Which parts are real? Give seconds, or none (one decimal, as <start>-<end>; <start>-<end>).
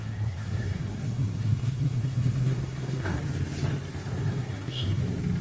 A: 3.2-4.2; 5.0-5.4